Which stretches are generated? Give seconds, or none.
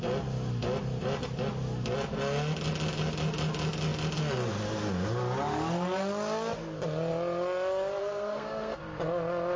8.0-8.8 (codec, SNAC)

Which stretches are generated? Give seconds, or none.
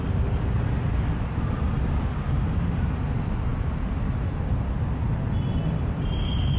3.5-4.0 (vocoder, BigVGAN v2)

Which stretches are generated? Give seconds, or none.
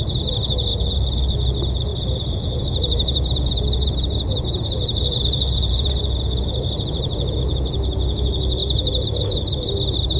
0.7-1.3 (vocoder, BigVGAN v2); 1.9-6.0; 8.6-9.7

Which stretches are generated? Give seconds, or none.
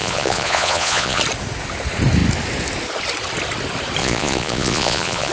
0.0-1.2 (vocoder, Vocos); 4.0-5.3